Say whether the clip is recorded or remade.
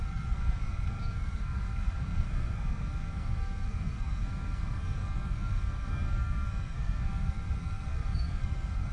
remade